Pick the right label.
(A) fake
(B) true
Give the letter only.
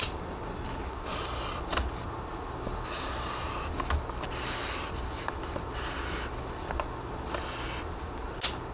B